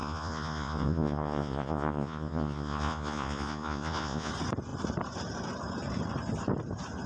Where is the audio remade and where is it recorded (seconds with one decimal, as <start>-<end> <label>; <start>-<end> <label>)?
0.0-4.3 remade; 4.3-7.1 recorded